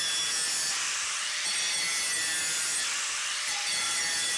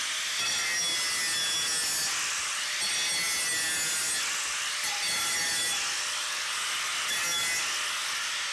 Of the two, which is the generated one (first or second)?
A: first